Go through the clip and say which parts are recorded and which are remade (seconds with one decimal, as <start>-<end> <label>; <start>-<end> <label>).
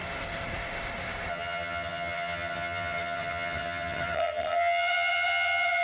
0.0-1.3 recorded; 1.3-5.8 remade